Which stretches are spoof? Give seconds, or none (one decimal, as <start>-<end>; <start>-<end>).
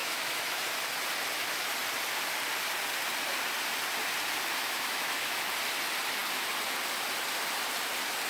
0.0-0.6; 4.6-5.4